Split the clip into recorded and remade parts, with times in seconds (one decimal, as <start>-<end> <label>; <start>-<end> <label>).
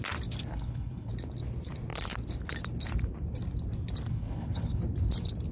0.0-0.5 recorded; 0.5-1.1 remade; 1.1-4.1 recorded; 4.1-4.8 remade; 4.8-5.5 recorded